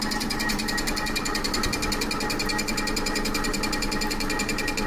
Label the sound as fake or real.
fake